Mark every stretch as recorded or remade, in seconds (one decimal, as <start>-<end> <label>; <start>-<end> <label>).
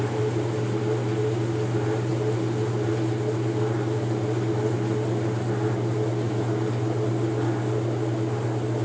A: 0.0-8.8 recorded